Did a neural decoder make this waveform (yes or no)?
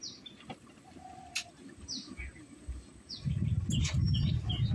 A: yes